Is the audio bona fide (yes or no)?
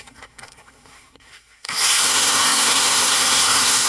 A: no